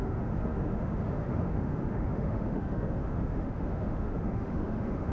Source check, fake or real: fake